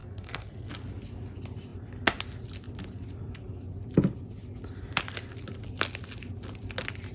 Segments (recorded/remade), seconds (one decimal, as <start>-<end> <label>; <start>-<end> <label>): 0.0-0.7 remade; 0.7-7.1 recorded